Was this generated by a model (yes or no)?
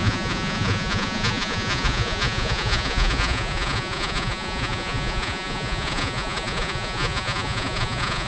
yes